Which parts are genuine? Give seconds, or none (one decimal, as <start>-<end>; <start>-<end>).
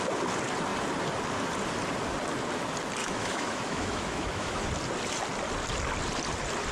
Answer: 0.0-3.0; 4.7-6.7